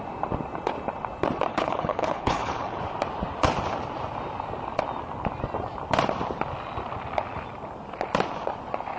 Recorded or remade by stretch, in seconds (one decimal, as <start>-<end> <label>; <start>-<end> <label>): 0.0-1.5 recorded; 1.5-2.8 remade; 2.8-9.0 recorded